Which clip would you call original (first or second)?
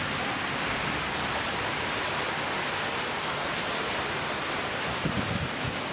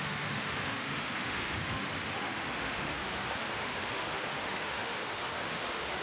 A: first